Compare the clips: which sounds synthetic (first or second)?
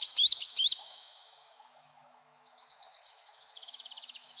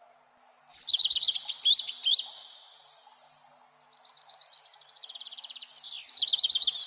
first